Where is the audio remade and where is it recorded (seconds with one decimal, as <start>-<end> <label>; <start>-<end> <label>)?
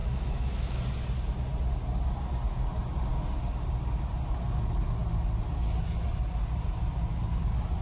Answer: 0.0-0.8 remade; 0.8-7.8 recorded